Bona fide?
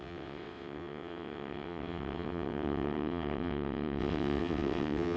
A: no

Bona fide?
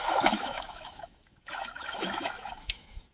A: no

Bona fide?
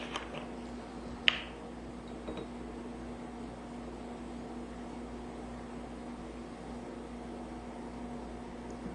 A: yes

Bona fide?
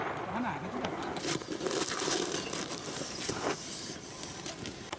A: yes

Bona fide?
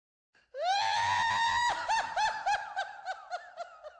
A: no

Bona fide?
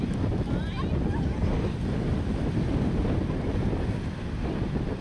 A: yes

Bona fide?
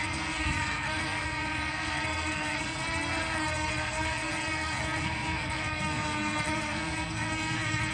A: no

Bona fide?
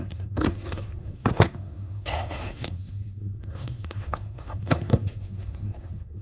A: no